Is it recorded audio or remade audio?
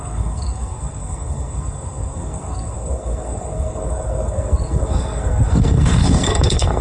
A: remade